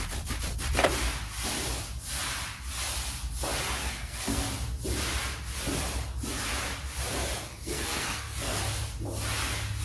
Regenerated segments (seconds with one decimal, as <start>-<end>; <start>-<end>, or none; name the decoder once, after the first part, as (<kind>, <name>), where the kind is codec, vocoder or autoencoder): 3.8-4.5 (codec, SNAC); 7.5-8.6